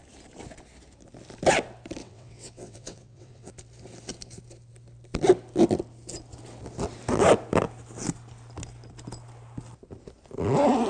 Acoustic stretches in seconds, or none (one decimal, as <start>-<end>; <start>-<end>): 0.0-2.0; 3.5-10.9